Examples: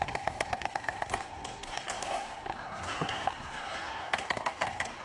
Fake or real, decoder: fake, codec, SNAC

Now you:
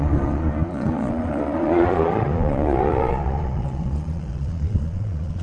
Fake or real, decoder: fake, vocoder, Vocos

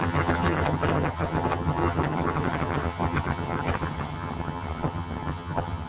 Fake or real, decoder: fake, vocoder, HiFi-GAN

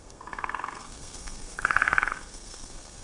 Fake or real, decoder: fake, codec, SNAC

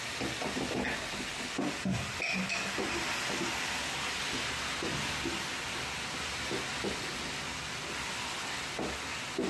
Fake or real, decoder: real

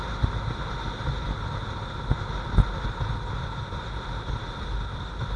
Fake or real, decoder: real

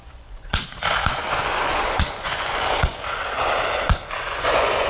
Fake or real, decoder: fake, vocoder, Vocos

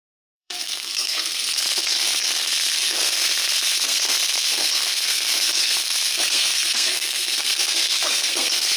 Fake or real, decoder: fake, codec, SNAC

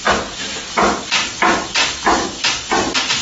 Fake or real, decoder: real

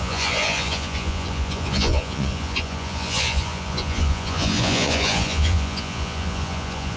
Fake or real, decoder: fake, vocoder, Vocos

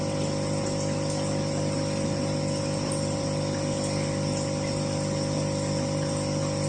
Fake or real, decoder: real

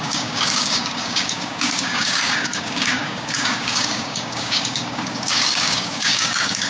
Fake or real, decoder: fake, codec, DAC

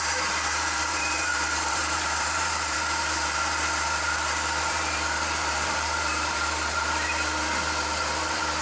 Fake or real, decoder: fake, vocoder, BigVGAN v2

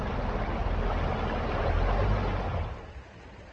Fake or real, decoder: real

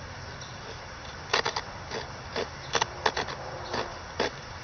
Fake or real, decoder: real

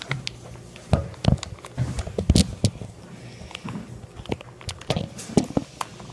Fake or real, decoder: real